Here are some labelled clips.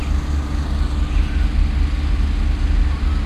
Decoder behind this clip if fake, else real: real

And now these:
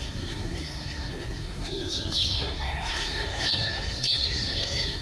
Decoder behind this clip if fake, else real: fake, codec, SNAC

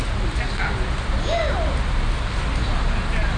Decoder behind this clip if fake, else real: real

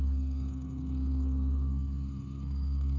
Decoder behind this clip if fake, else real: fake, codec, SNAC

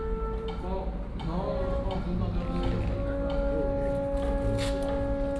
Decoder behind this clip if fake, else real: real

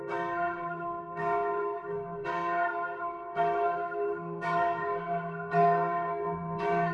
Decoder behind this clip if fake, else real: fake, codec, SNAC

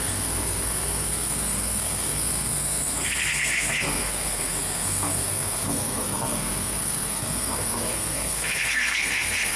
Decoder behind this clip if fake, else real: fake, codec, SNAC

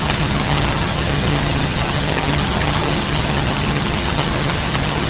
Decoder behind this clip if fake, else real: fake, vocoder, HiFi-GAN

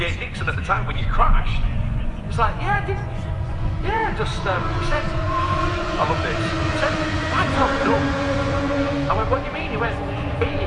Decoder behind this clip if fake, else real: fake, vocoder, Vocos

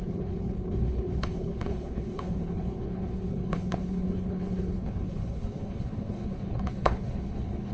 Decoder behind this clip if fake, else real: fake, codec, HILCodec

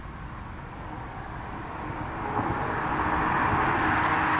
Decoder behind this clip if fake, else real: real